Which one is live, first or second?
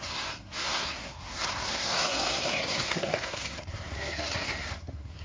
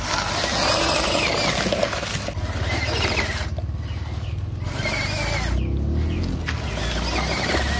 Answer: second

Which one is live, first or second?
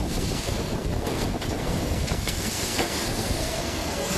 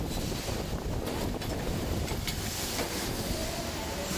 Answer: second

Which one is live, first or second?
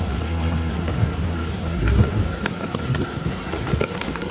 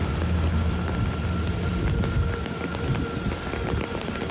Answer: second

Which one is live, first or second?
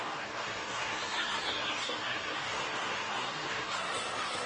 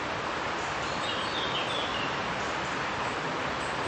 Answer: second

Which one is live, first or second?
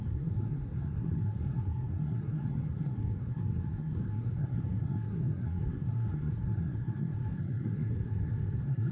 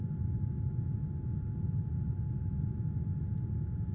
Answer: second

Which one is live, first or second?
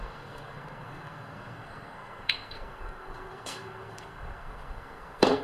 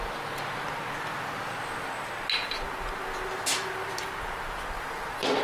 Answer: second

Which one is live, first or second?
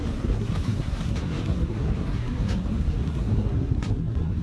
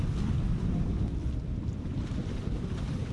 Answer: second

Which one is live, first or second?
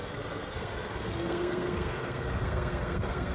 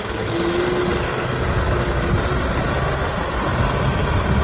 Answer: second